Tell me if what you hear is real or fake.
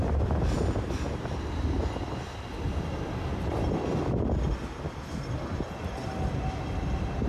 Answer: real